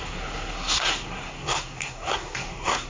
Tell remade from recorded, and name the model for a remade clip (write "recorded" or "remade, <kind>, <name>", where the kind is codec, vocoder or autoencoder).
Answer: remade, codec, SNAC